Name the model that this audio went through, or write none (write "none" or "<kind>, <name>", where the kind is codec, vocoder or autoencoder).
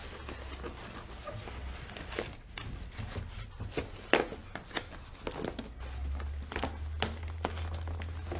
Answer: none